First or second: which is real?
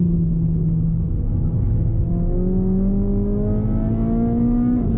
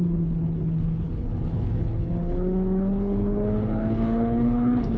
first